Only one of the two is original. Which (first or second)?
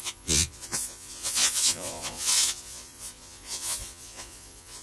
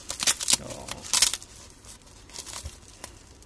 second